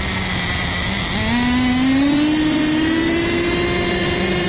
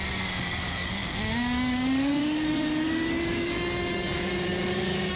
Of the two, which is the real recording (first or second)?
first